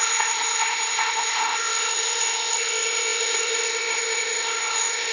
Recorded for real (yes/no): no